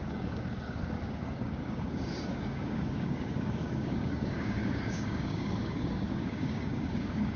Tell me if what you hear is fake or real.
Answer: fake